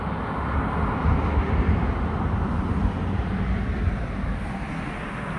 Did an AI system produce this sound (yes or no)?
no